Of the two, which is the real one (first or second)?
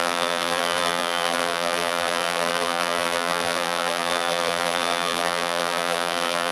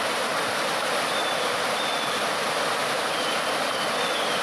second